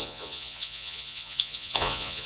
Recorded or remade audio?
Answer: remade